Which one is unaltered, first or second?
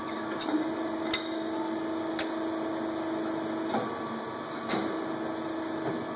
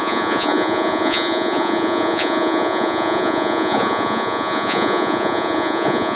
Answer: first